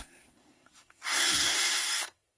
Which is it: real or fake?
fake